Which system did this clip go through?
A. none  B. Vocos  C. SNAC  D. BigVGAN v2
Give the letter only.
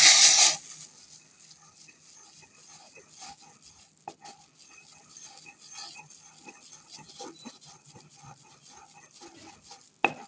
A